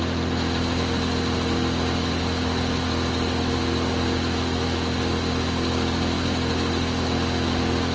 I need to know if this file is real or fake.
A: real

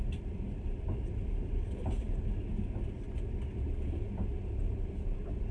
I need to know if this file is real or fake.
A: real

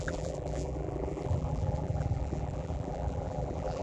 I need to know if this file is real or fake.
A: fake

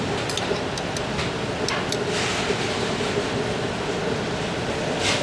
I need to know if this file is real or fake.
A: real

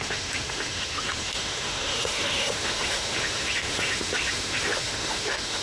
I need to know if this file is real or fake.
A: fake